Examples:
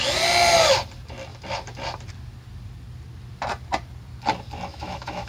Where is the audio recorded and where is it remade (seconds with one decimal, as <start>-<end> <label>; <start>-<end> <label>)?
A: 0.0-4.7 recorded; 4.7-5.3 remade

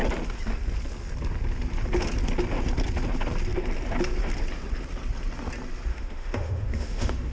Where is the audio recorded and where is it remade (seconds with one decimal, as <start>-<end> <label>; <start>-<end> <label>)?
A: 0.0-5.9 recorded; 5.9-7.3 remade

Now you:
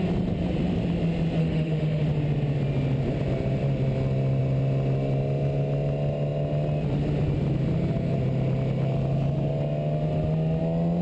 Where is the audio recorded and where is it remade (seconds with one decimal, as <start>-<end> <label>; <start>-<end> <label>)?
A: 0.0-1.4 recorded; 1.4-2.0 remade; 2.0-11.0 recorded

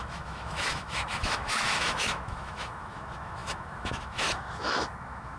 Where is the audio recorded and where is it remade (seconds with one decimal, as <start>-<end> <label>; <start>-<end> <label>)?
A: 0.0-5.4 remade

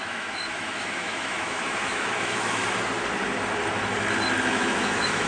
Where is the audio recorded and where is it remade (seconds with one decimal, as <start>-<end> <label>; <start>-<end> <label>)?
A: 0.0-2.6 remade; 2.6-4.6 recorded; 4.6-5.3 remade